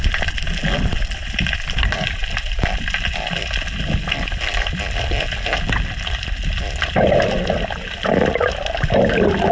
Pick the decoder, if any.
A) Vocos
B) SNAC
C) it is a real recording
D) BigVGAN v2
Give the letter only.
C